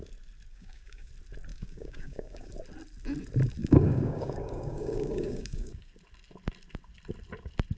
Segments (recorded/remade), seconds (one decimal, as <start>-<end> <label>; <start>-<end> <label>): 0.0-0.5 recorded; 0.5-1.1 remade; 1.1-1.5 recorded; 1.5-2.5 remade; 2.5-3.6 recorded; 3.6-5.9 remade; 5.9-7.8 recorded